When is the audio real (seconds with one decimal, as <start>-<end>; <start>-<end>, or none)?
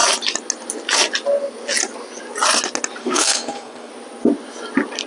0.0-3.0; 3.9-5.1